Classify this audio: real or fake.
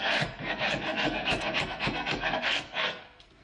fake